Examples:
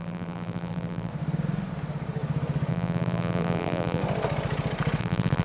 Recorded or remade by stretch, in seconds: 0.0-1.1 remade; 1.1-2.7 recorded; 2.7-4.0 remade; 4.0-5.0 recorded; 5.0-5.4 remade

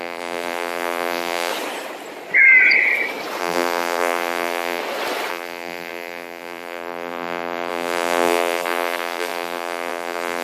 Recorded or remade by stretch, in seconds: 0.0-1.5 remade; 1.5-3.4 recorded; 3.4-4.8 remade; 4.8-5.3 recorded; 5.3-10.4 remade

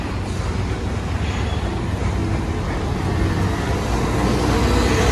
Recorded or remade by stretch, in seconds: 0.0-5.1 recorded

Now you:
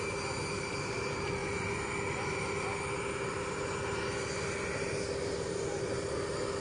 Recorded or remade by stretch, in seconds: 0.0-6.6 recorded